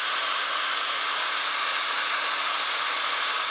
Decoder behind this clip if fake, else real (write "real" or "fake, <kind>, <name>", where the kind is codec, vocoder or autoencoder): fake, vocoder, BigVGAN v2